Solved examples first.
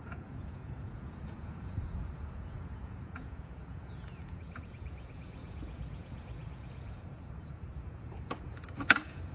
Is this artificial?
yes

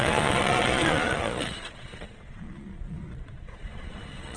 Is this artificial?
yes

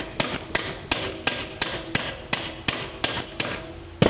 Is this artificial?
no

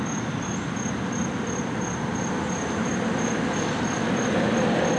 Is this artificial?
no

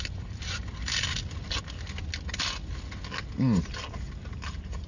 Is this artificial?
no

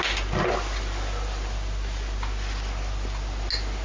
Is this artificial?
no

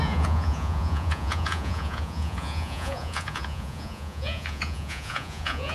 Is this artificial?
yes